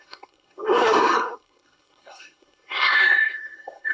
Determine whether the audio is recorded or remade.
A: remade